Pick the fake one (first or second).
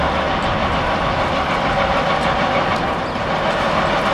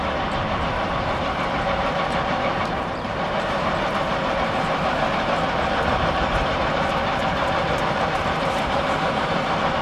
second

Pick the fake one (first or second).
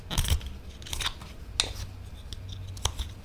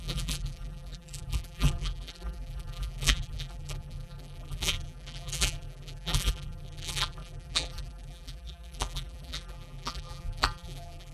second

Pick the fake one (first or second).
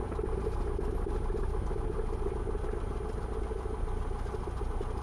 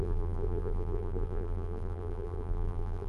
second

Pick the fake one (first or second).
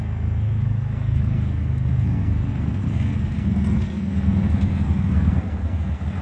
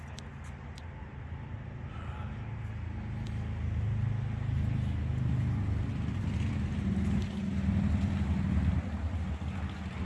first